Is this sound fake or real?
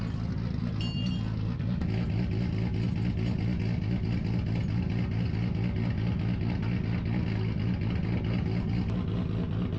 real